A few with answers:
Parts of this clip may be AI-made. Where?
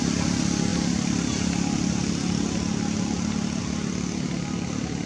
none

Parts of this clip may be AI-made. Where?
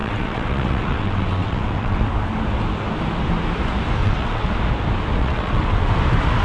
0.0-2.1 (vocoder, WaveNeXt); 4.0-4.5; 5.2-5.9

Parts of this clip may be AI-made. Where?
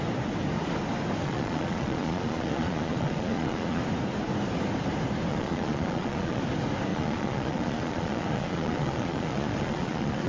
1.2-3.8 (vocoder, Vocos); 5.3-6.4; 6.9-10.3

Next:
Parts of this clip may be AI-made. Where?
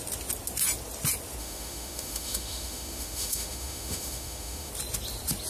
1.4-4.7 (autoencoder, DAC-VAE)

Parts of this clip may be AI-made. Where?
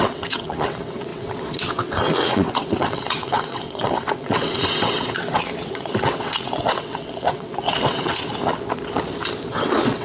0.0-8.3 (vocoder, WaveNeXt); 9.5-10.0